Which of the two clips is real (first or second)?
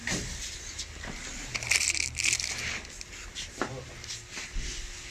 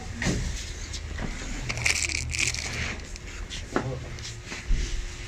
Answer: second